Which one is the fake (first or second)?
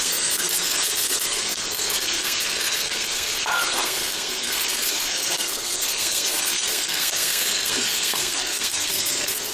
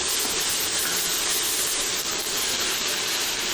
first